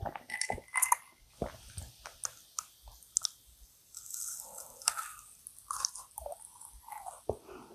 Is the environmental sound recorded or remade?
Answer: recorded